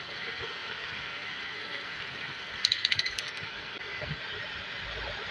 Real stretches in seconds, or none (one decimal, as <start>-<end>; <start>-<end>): 4.2-5.3